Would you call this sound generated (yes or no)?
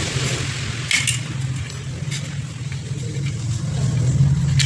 no